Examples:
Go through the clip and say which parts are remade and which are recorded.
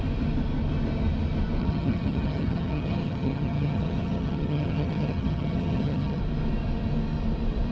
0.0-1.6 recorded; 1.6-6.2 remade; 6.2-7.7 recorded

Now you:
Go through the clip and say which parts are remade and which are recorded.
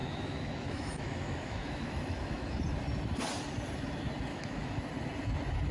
0.0-2.6 remade; 2.6-4.3 recorded; 4.3-4.8 remade; 4.8-5.7 recorded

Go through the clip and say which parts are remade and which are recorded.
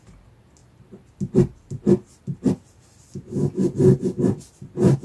0.0-5.0 recorded